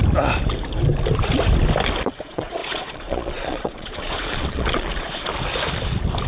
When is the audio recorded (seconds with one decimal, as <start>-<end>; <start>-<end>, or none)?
0.0-2.1; 5.3-6.3